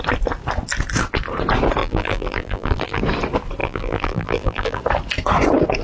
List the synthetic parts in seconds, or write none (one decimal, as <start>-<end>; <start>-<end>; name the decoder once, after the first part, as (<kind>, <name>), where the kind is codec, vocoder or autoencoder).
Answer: 1.8-3.0 (vocoder, BigVGAN v2); 3.6-4.8